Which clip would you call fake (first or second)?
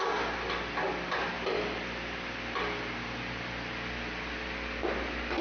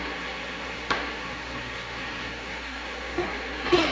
second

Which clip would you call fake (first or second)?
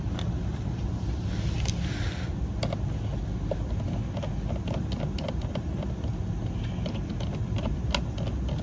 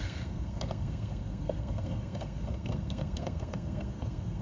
second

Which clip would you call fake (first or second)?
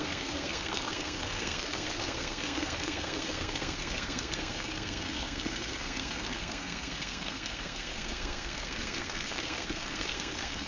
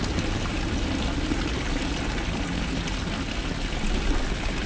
first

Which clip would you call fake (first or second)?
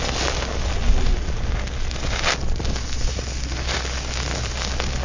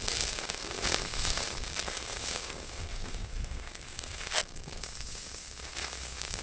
second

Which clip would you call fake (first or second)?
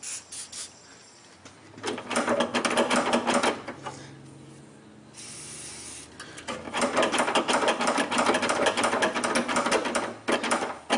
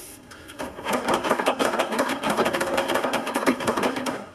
second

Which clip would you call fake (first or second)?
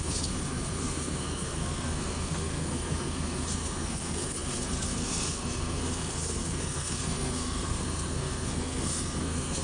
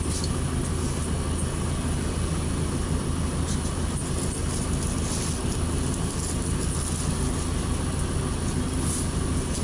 first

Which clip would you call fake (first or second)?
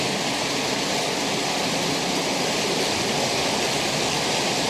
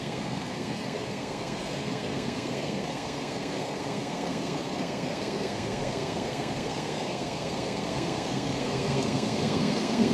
second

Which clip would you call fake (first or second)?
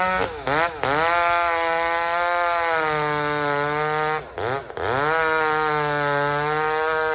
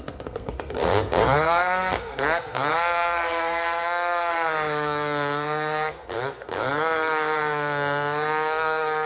second